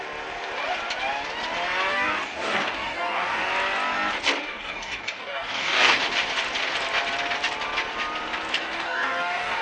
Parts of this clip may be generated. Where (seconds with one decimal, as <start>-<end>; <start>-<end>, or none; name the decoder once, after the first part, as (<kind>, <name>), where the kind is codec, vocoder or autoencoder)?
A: 1.9-3.5 (codec, DAC); 4.4-6.0; 8.5-9.6